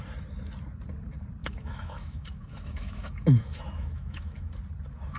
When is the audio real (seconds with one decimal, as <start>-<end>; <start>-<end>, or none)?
0.0-1.4; 4.5-5.2